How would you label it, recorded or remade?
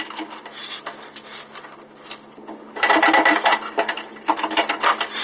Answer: recorded